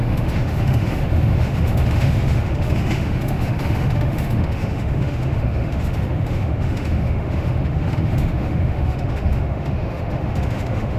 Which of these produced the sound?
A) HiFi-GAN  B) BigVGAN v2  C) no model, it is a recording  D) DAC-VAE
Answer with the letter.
D